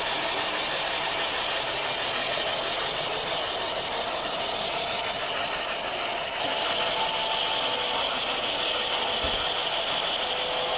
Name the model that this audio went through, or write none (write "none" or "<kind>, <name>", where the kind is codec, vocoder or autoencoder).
none